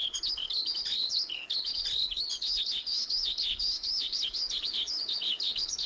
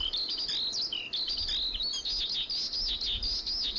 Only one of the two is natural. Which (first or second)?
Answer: second